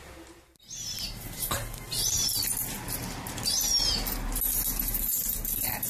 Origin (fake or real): real